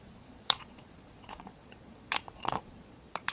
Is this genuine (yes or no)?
no